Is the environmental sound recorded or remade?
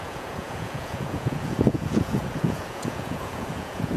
remade